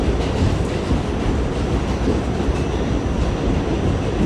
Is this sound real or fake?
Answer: real